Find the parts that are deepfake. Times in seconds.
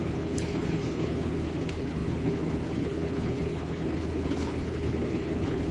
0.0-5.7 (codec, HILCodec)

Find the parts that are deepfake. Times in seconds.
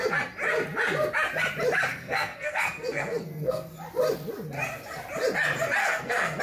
1.9-3.7 (codec, SNAC); 5.8-6.4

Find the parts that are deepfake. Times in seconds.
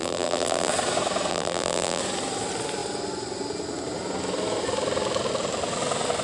0.0-0.7 (vocoder, BigVGAN v2); 1.3-2.0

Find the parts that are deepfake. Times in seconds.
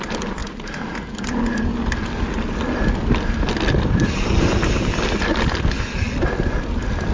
none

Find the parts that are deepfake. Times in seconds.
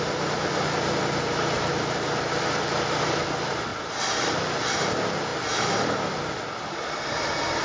none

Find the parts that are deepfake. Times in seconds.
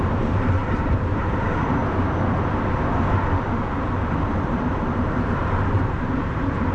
0.0-1.8 (vocoder, BigVGAN v2); 4.1-6.7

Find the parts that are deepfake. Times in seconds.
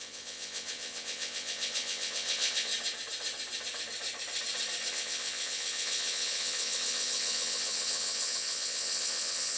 0.0-2.7 (vocoder, WaveNeXt); 4.9-9.6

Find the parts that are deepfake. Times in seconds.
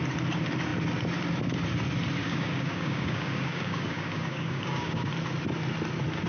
2.2-5.1 (codec, DAC)